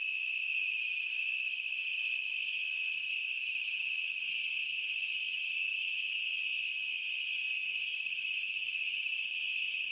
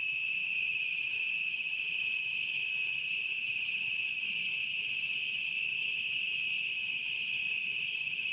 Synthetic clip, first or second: second